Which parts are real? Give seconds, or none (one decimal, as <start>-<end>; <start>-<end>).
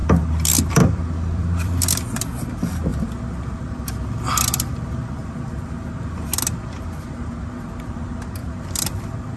1.8-2.9; 5.7-8.4